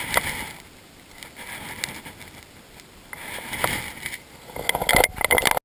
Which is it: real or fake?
real